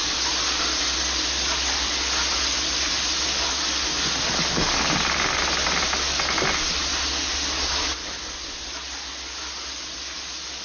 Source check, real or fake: real